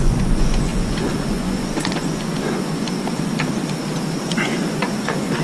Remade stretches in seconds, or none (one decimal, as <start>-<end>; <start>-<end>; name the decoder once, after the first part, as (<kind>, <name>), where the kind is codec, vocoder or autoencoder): 0.0-3.3 (vocoder, Vocos); 4.2-5.4